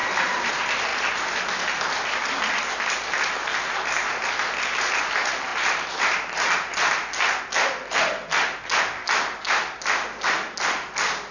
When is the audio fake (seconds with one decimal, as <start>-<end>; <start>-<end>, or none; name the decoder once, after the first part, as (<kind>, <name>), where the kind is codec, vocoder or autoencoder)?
none